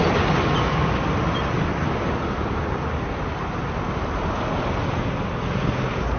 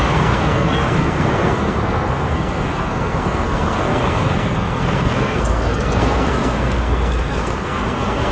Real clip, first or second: first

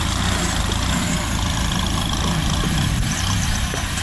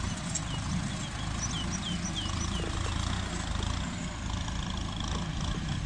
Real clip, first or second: second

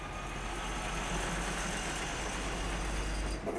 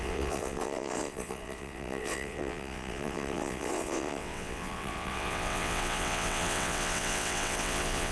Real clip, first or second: first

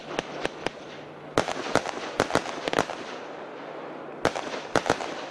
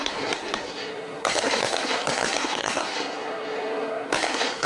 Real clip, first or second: first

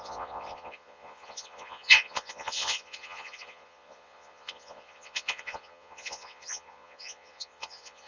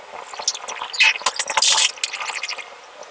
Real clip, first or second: second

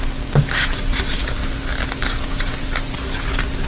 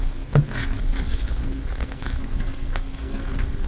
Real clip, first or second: first